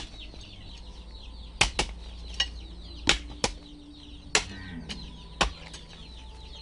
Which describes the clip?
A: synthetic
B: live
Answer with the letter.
B